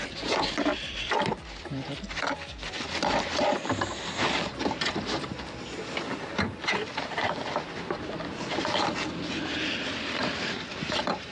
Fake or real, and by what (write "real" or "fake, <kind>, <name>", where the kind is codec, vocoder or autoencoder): fake, vocoder, BigVGAN v2